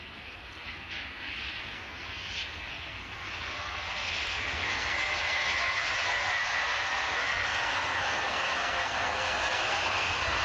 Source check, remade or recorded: remade